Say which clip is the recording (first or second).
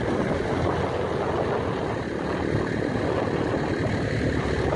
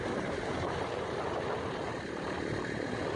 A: first